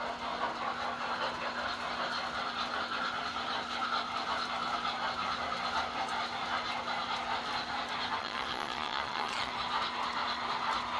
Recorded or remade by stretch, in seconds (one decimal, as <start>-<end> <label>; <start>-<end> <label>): 0.0-8.2 recorded; 8.2-9.5 remade; 9.5-11.0 recorded